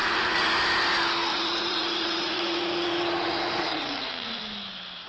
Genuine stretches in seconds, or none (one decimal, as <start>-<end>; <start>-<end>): 0.5-1.3; 4.4-5.1